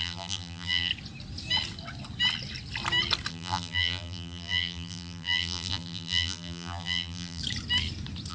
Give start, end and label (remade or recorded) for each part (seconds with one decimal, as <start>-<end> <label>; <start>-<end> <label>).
0.0-0.9 remade; 0.9-3.3 recorded; 3.3-7.4 remade; 7.4-8.3 recorded